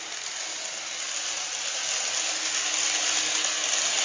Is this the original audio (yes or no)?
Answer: yes